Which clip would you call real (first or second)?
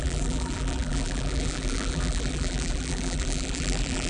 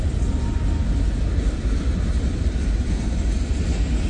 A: second